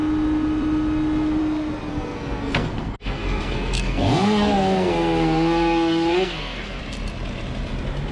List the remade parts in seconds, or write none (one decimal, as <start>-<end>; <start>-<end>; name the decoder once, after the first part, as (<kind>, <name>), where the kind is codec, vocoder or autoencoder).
1.9-6.8 (codec, SNAC)